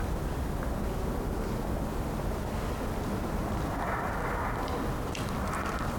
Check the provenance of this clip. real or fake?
real